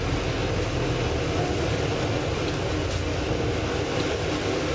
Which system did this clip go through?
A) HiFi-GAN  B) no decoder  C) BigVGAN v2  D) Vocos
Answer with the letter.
B